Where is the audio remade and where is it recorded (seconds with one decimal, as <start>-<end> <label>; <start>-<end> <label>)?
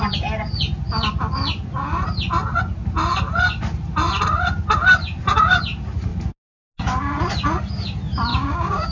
0.0-8.3 recorded; 8.3-8.9 remade